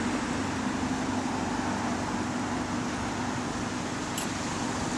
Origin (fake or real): real